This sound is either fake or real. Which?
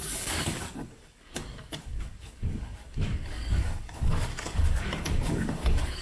fake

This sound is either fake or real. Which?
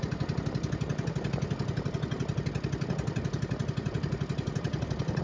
real